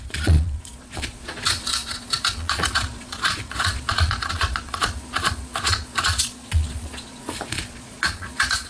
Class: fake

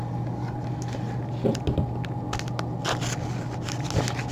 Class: real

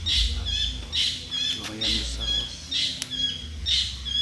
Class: real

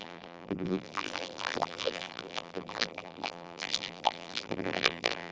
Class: fake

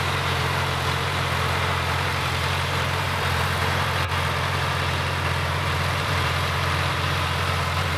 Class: fake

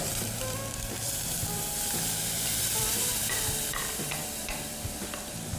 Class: fake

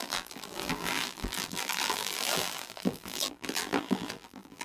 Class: fake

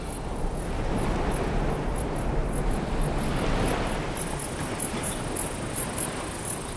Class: real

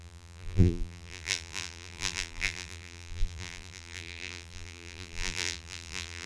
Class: fake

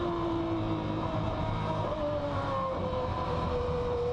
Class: fake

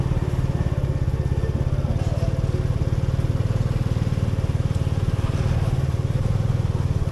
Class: real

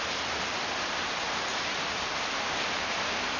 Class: real